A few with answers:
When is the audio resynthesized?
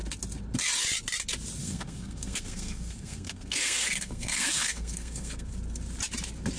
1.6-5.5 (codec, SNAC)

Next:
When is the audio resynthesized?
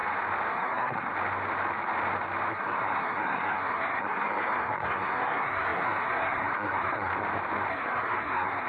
0.5-1.1 (codec, SNAC); 2.5-7.1; 7.7-8.7